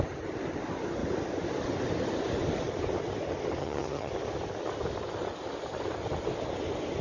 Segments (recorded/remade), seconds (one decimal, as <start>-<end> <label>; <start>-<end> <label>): 0.0-3.6 recorded; 3.6-4.1 remade; 4.1-7.0 recorded